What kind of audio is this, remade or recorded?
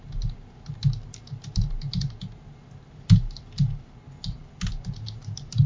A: recorded